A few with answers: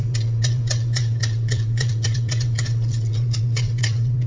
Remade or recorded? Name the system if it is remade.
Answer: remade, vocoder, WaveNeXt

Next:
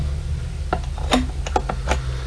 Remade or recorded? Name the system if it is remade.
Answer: recorded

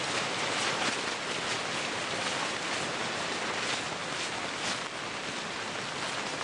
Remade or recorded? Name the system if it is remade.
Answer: recorded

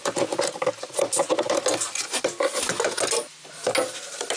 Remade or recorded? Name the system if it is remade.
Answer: recorded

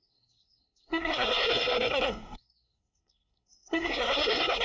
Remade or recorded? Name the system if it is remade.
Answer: remade, codec, SNAC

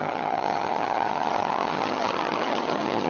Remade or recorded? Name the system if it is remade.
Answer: remade, vocoder, HiFi-GAN